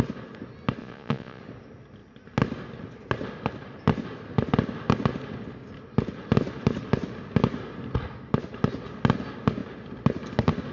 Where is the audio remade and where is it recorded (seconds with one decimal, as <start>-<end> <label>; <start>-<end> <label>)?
0.0-0.8 recorded; 0.8-1.4 remade; 1.4-10.7 recorded